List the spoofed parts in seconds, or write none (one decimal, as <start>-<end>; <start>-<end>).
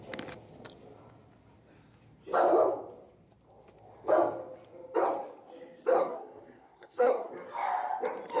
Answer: 6.0-7.3